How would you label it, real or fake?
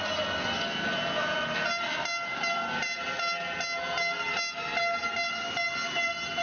real